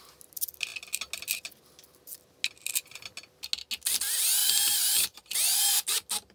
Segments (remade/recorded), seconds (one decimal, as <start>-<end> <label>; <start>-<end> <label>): 0.0-4.4 recorded; 4.4-5.2 remade; 5.2-6.3 recorded